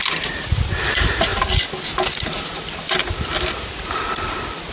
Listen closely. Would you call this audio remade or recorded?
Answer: recorded